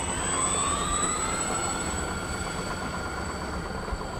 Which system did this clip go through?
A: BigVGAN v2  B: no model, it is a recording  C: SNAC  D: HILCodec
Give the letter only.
A